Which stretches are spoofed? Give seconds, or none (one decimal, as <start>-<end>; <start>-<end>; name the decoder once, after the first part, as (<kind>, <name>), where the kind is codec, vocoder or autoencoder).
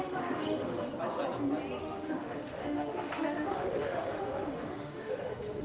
0.0-0.9 (autoencoder, DAC-VAE); 1.8-5.6